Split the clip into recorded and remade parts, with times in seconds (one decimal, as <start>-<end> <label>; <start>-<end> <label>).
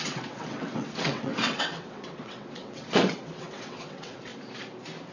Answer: 0.0-4.3 remade; 4.3-5.1 recorded